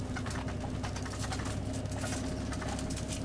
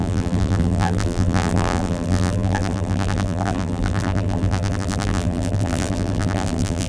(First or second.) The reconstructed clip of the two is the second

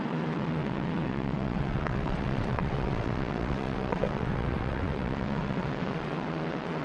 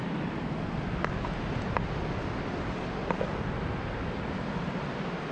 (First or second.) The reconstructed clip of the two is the first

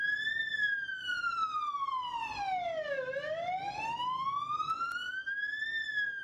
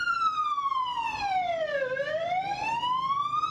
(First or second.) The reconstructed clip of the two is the second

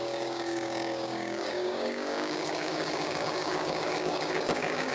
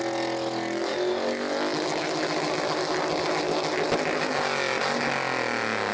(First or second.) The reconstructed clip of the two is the first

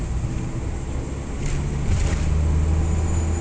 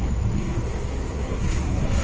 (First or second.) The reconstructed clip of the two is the second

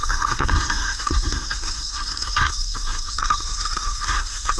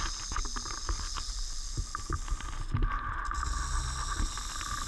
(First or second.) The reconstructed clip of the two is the first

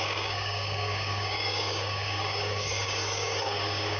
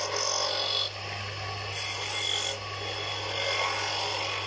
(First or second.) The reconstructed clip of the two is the first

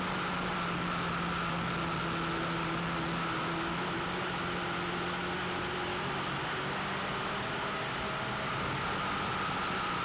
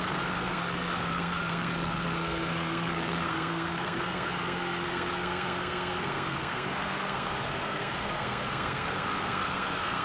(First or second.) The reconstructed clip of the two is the second